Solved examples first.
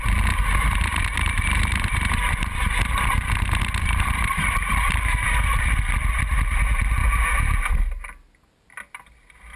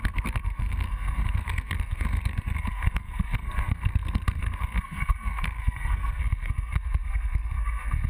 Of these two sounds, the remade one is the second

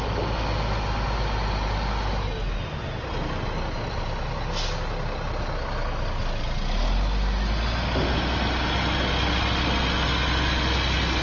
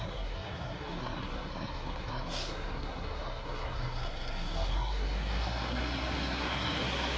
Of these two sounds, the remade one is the second